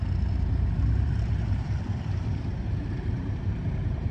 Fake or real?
fake